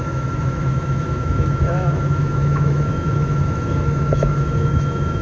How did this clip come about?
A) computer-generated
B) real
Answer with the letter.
A